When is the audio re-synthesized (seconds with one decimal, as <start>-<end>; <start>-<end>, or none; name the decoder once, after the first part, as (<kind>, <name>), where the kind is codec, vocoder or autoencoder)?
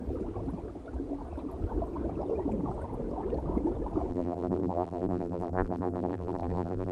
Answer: 4.1-6.9 (vocoder, BigVGAN v2)